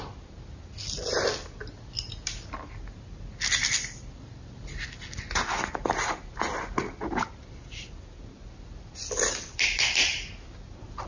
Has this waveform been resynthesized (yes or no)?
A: no